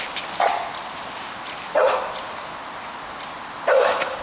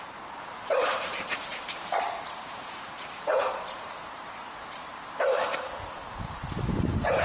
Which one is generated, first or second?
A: second